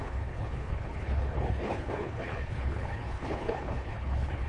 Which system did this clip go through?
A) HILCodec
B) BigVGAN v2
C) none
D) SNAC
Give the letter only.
A